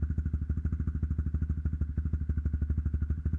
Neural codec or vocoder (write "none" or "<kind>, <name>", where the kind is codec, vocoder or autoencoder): none